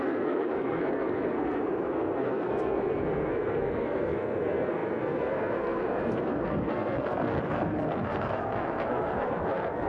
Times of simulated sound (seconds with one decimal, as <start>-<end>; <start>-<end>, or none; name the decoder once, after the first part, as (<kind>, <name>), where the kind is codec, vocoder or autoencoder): 0.0-9.9 (codec, SNAC)